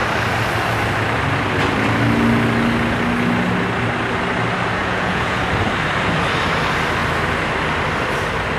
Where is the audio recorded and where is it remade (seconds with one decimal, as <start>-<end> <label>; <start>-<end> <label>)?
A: 0.0-4.8 recorded; 4.8-5.4 remade; 5.4-8.6 recorded